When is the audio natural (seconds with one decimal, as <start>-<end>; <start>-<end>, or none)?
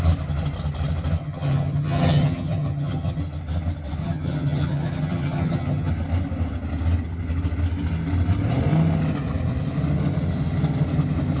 0.0-1.2; 3.2-4.0; 5.9-11.4